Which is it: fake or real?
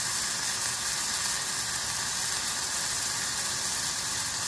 real